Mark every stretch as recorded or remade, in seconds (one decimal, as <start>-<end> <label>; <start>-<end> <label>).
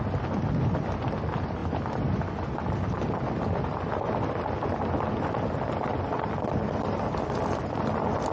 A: 0.0-8.3 recorded